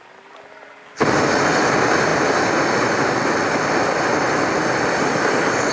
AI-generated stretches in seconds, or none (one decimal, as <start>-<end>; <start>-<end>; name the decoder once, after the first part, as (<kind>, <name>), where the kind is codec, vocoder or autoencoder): none